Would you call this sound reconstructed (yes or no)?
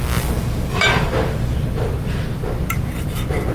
yes